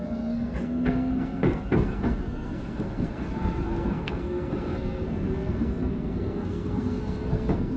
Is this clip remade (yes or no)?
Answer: yes